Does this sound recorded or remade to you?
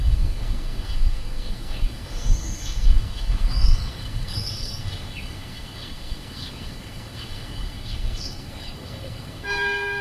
remade